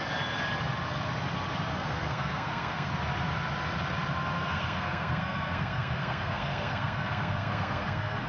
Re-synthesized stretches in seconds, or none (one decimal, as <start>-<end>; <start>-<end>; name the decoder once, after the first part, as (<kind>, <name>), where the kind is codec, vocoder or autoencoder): 1.7-2.9 (codec, SNAC); 4.4-8.3